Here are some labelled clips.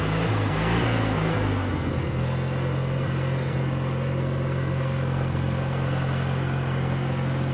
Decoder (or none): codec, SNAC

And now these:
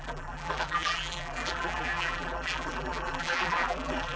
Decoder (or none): vocoder, BigVGAN v2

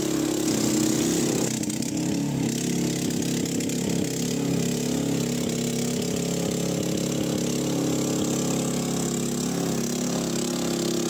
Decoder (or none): none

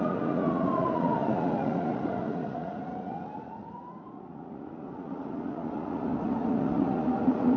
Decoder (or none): vocoder, Vocos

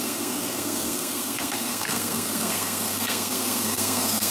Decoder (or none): codec, SNAC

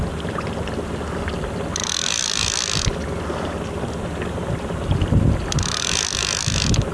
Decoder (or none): none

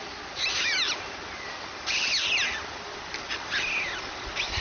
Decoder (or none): none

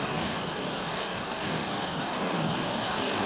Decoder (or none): codec, DAC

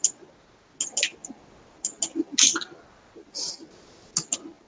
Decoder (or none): none